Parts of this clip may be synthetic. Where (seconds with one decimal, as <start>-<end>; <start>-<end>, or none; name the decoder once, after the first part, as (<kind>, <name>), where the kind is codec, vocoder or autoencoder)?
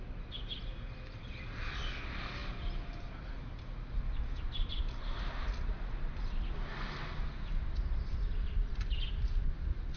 none